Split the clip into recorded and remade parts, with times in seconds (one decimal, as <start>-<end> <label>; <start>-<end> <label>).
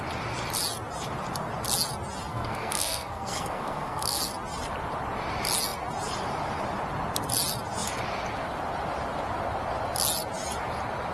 0.0-2.3 recorded; 2.3-4.2 remade; 4.2-11.1 recorded